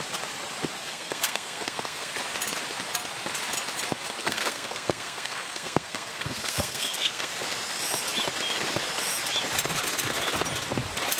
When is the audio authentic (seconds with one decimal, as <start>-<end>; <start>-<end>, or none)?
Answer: 0.0-0.9; 2.1-4.2; 7.3-11.2